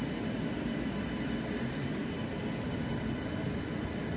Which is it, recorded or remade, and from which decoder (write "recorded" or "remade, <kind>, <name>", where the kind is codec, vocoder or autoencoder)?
recorded